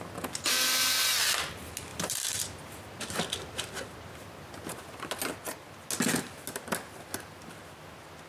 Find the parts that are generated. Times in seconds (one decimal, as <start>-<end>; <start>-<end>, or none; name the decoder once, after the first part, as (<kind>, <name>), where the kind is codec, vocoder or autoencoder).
1.9-5.0 (vocoder, BigVGAN v2)